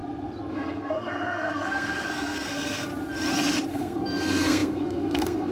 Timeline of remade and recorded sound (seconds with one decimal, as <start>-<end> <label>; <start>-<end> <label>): 0.0-0.5 recorded; 0.5-2.9 remade; 2.9-3.7 recorded; 3.7-5.5 remade